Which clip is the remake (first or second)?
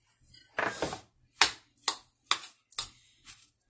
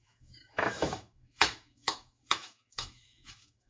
second